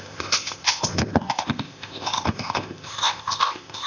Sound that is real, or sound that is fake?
fake